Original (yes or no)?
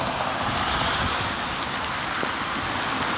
yes